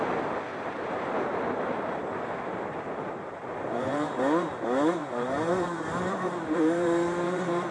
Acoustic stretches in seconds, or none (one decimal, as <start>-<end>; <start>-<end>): 0.0-0.5; 4.1-5.0